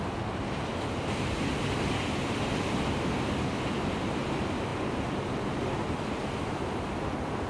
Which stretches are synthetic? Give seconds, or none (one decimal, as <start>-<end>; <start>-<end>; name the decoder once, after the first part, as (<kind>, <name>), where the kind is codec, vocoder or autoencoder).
none